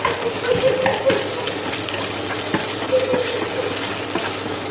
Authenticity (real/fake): real